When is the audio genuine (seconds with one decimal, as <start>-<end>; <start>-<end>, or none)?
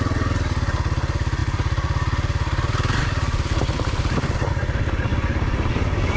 0.0-1.4; 4.5-5.1; 5.7-6.2